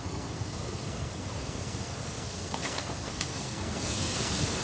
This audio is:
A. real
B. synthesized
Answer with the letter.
B